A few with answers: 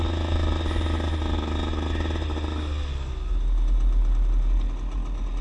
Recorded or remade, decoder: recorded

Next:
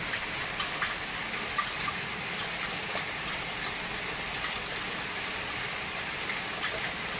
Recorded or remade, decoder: recorded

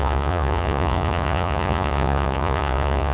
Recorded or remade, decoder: remade, vocoder, Vocos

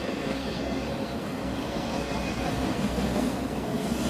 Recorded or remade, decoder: remade, codec, SNAC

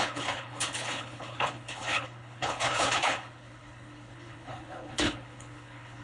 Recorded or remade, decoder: remade, codec, HILCodec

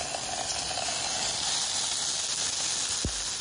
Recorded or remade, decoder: recorded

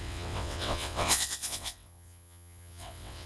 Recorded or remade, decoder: remade, vocoder, WaveNeXt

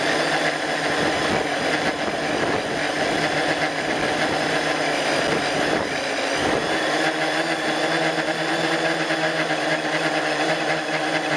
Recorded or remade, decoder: recorded